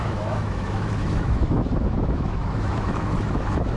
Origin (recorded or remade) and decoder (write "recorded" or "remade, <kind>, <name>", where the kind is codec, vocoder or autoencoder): remade, autoencoder, DAC-VAE